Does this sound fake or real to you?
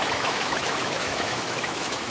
fake